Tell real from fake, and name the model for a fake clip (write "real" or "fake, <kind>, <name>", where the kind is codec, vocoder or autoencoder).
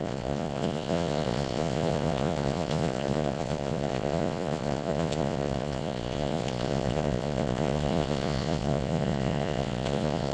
fake, vocoder, Vocos